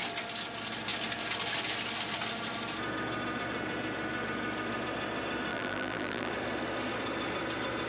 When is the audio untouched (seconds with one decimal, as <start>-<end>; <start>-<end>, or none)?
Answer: 0.0-5.5; 6.3-7.9